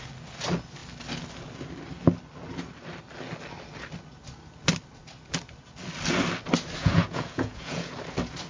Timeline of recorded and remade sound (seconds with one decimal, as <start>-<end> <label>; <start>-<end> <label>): 0.0-6.8 recorded; 6.8-7.9 remade; 7.9-8.5 recorded